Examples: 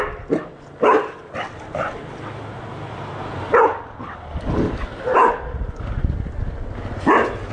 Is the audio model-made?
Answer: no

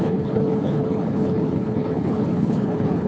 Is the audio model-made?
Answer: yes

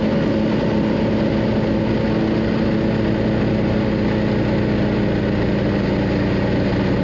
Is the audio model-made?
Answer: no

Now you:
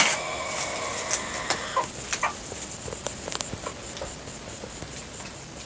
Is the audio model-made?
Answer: no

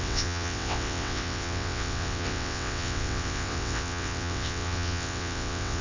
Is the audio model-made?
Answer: yes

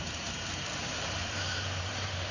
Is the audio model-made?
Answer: yes